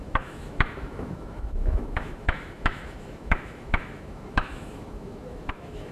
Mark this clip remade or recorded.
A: remade